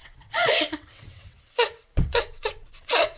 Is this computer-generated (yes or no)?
yes